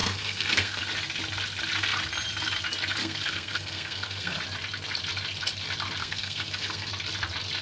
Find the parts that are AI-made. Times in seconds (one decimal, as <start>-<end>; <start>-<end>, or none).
0.0-0.8; 3.0-4.4; 6.0-6.9